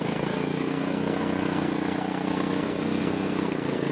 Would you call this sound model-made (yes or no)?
yes